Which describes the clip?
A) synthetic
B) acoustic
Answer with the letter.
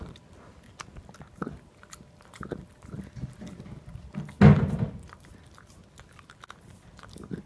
B